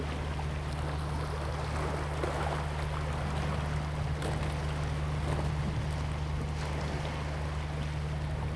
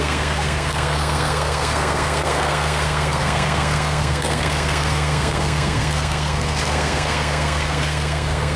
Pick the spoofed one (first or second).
second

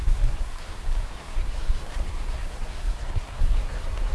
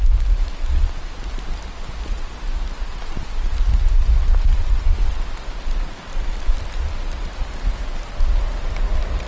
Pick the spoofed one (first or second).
first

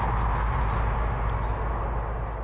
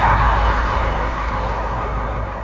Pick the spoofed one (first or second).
second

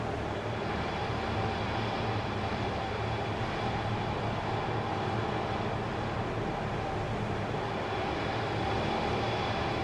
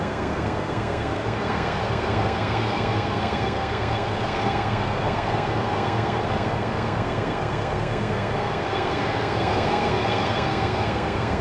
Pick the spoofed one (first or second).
second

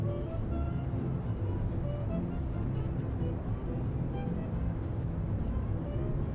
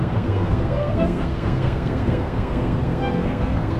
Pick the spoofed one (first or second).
second